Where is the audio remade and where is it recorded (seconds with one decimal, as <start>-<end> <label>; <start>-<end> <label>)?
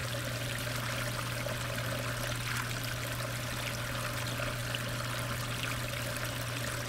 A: 0.0-1.8 remade; 1.8-6.9 recorded